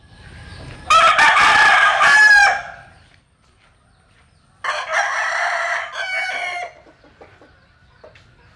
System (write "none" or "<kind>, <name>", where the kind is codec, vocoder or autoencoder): vocoder, BigVGAN v2